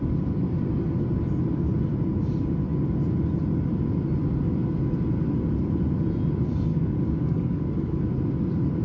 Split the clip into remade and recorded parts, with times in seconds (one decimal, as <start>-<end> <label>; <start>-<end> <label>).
0.0-6.7 recorded; 6.7-8.0 remade; 8.0-8.8 recorded